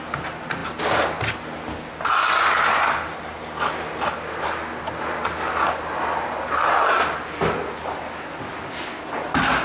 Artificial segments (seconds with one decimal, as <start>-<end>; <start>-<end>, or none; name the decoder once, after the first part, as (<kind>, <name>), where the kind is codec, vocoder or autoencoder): none